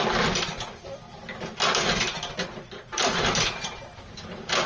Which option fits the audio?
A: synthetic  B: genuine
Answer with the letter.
B